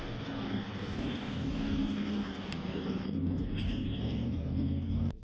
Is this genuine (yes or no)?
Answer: no